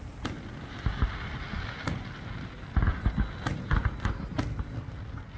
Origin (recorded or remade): recorded